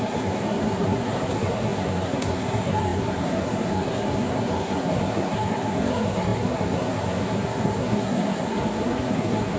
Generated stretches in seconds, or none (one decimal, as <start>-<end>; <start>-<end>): 0.0-9.6